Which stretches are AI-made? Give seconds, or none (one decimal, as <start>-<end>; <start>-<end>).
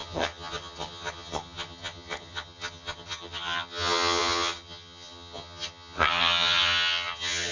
0.0-7.5